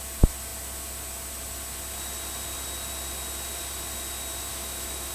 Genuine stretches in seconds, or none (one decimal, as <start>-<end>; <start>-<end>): 0.0-4.5